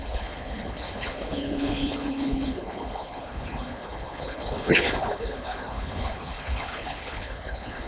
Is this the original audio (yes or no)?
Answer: no